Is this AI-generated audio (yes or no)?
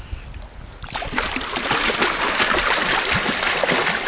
no